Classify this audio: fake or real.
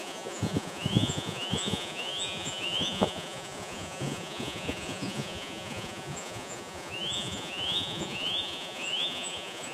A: fake